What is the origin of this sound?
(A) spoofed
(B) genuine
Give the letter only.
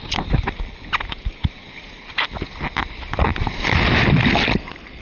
B